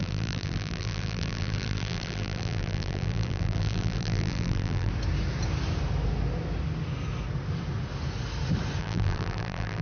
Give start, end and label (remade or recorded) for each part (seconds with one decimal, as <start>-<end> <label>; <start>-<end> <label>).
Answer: 0.0-4.9 remade; 4.9-8.8 recorded; 8.8-9.8 remade